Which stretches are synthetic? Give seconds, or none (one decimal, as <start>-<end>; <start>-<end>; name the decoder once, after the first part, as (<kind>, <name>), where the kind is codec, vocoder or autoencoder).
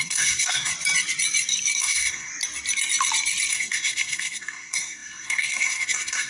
0.0-0.7 (codec, SNAC); 1.8-2.3; 3.5-6.3